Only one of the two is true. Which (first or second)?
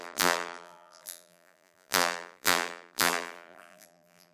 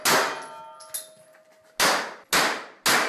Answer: second